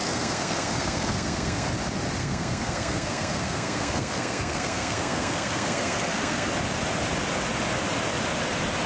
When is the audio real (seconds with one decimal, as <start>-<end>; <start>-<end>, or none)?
1.7-2.2; 6.5-8.9